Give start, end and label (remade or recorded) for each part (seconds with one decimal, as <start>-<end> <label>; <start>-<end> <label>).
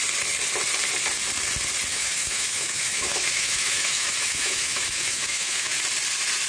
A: 0.0-1.9 recorded; 1.9-5.8 remade; 5.8-6.5 recorded